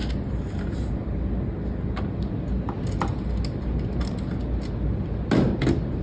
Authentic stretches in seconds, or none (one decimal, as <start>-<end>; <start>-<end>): 0.0-6.0